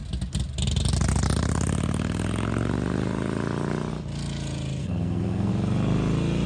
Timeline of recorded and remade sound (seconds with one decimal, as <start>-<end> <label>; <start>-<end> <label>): 0.0-4.8 recorded; 4.8-5.5 remade; 5.5-6.5 recorded